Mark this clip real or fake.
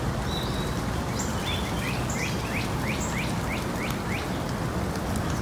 real